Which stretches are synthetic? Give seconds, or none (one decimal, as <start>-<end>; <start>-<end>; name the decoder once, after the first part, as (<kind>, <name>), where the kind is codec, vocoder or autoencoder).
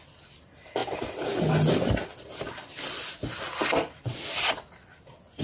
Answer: none